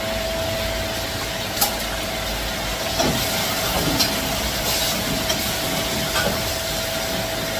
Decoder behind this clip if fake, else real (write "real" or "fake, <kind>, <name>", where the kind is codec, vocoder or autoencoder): real